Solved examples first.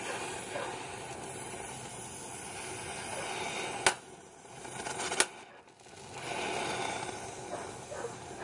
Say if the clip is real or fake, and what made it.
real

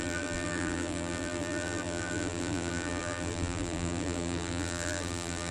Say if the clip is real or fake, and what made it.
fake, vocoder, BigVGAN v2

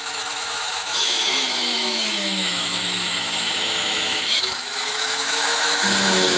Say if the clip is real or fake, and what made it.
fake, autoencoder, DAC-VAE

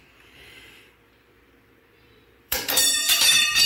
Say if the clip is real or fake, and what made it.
fake, vocoder, BigVGAN v2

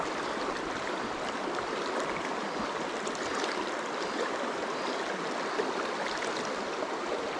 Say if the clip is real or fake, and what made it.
real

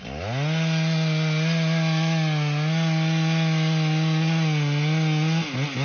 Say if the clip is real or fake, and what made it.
real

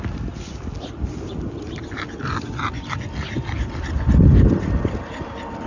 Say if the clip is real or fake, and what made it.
real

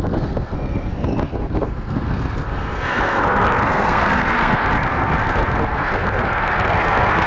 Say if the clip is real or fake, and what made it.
fake, codec, SNAC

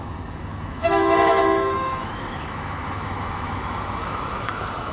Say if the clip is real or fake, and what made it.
fake, autoencoder, DAC-VAE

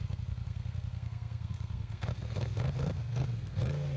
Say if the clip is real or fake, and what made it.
fake, codec, SNAC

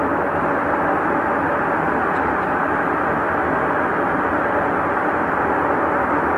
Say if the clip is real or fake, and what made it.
real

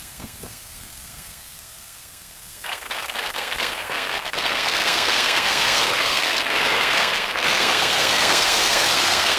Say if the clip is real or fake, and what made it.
fake, codec, SNAC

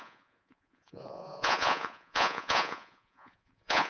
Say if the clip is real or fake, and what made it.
fake, vocoder, Vocos